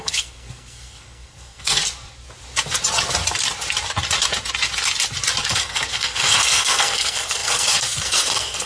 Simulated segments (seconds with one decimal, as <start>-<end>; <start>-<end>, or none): 0.0-1.8; 5.5-8.7